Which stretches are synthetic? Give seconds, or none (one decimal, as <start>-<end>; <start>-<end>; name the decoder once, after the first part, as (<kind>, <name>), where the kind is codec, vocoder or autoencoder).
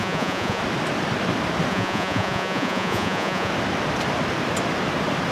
0.0-0.6 (vocoder, Vocos); 1.7-3.5